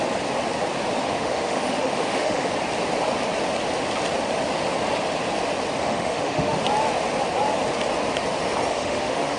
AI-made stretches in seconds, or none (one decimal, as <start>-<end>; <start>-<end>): 1.0-2.5; 5.8-6.6; 8.7-9.4